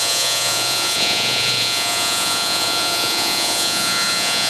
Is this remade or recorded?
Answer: remade